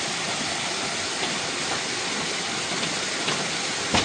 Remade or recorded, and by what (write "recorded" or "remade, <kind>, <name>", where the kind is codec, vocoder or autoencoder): recorded